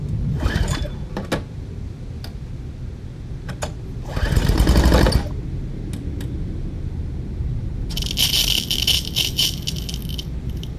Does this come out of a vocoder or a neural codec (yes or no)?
no